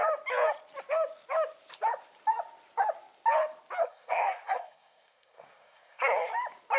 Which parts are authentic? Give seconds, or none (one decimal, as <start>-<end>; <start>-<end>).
0.0-3.8; 6.3-6.8